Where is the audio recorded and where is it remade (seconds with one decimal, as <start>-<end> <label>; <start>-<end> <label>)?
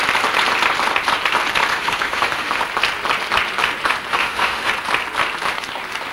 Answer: 0.0-1.7 recorded; 1.7-2.6 remade; 2.6-4.1 recorded; 4.1-4.7 remade; 4.7-6.1 recorded